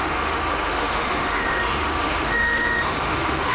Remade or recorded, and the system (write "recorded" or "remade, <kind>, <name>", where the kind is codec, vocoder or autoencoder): remade, autoencoder, DAC-VAE